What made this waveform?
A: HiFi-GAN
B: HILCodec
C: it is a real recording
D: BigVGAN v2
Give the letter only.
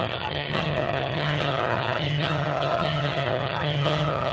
A